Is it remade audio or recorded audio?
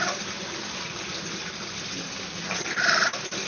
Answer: recorded